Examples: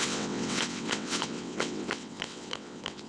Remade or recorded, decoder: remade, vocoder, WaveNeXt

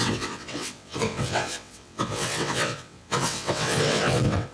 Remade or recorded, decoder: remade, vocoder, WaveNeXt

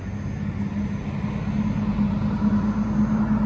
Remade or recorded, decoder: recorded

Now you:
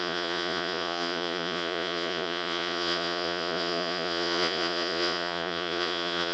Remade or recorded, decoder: remade, vocoder, Vocos